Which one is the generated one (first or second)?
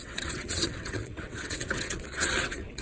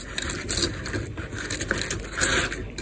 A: first